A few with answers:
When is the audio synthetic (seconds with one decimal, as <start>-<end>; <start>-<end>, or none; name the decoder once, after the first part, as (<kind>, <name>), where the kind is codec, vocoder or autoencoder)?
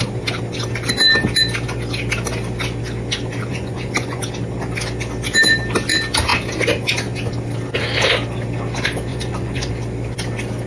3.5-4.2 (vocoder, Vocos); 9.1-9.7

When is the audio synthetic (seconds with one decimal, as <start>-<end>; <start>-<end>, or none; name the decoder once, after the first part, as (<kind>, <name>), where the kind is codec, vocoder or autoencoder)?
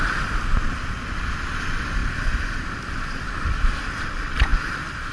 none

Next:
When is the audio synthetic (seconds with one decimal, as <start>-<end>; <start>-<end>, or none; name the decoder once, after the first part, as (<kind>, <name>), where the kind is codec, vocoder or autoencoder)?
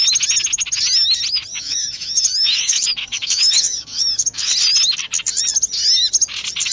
1.5-4.5 (autoencoder, DAC-VAE)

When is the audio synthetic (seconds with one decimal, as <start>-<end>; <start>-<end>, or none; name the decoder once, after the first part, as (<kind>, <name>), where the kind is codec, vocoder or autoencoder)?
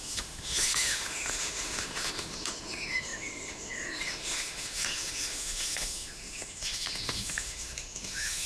0.0-8.5 (autoencoder, DAC-VAE)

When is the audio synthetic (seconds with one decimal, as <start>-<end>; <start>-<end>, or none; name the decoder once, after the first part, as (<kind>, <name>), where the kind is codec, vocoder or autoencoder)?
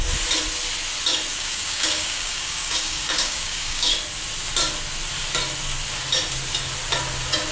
1.3-3.9 (codec, DAC)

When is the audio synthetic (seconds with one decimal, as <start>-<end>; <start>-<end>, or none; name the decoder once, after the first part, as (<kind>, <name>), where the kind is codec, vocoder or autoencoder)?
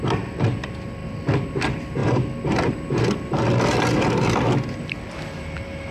2.0-5.4 (vocoder, BigVGAN v2)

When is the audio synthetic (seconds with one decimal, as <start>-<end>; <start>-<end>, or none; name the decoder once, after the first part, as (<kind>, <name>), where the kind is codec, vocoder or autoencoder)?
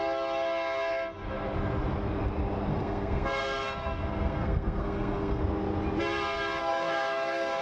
2.7-5.4 (codec, SNAC); 6.6-7.6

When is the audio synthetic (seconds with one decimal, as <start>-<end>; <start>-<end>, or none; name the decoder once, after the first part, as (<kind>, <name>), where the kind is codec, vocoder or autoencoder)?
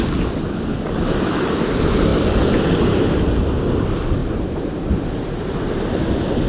4.2-6.5 (vocoder, BigVGAN v2)